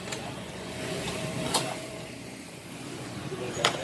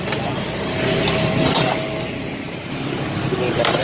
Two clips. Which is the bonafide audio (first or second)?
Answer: second